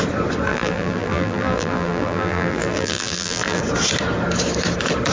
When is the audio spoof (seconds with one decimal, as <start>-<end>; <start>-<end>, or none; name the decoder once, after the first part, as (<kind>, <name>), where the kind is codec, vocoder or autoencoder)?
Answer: 0.5-3.6 (vocoder, BigVGAN v2)